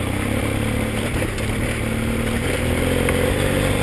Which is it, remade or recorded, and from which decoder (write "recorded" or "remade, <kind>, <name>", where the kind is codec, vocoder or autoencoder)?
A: recorded